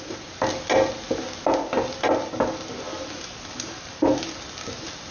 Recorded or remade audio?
recorded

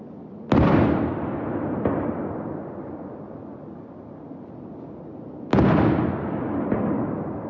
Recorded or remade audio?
recorded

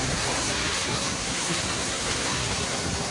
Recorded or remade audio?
remade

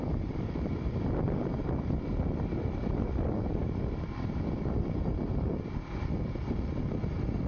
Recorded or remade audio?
remade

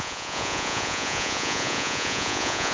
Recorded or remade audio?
remade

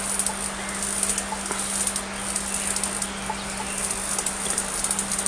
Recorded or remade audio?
recorded